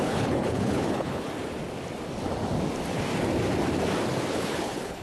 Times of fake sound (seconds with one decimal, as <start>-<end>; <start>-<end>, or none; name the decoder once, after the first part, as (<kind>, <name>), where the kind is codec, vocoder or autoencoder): 0.0-1.3 (codec, HILCodec); 4.3-5.0